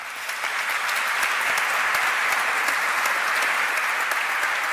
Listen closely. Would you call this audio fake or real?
real